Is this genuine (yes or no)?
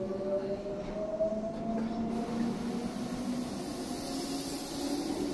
yes